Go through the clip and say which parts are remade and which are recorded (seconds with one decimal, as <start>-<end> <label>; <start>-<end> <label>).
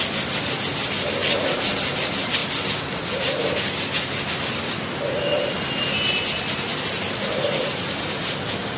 0.0-8.8 recorded